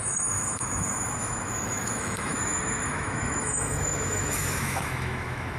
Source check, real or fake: fake